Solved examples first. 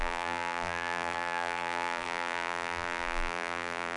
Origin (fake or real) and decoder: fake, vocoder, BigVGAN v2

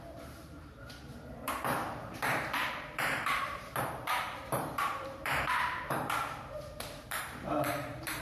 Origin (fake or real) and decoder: fake, vocoder, BigVGAN v2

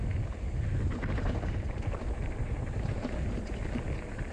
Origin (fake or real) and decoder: real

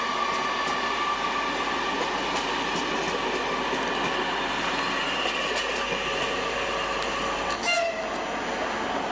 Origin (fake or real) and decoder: real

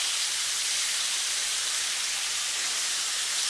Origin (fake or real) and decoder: fake, vocoder, BigVGAN v2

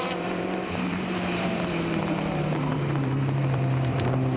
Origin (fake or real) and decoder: fake, vocoder, BigVGAN v2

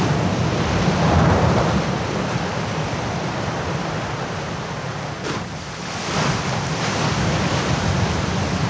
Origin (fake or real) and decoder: real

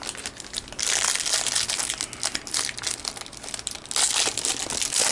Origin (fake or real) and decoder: real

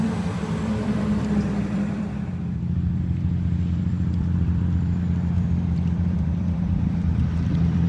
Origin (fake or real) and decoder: fake, vocoder, BigVGAN v2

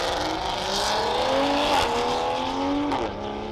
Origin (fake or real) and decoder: real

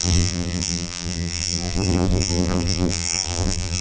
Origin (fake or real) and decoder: fake, vocoder, BigVGAN v2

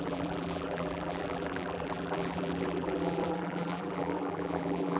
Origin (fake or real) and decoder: fake, vocoder, BigVGAN v2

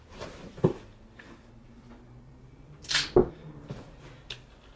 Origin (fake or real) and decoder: fake, vocoder, BigVGAN v2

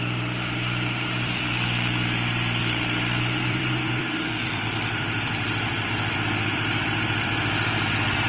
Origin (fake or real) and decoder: fake, vocoder, BigVGAN v2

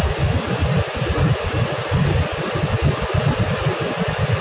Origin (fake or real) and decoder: real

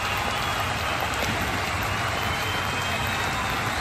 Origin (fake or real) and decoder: real